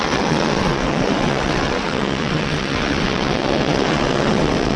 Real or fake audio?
fake